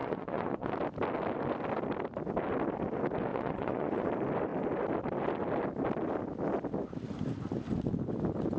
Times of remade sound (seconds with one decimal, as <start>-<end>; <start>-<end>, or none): 0.0-0.7; 3.3-4.1